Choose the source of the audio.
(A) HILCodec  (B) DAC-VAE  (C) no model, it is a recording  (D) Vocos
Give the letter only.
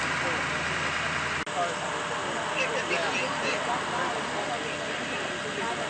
C